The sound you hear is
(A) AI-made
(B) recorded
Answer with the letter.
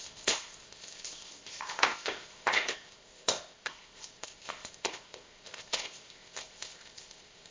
A